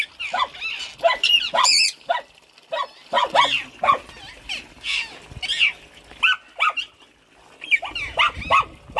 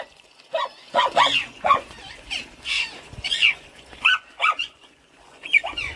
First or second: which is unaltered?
first